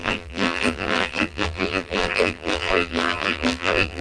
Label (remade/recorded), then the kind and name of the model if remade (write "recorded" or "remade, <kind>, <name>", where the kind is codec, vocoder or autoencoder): remade, vocoder, BigVGAN v2